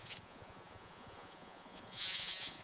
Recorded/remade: remade